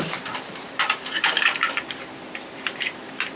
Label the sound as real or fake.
fake